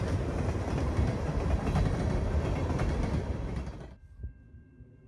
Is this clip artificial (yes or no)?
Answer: no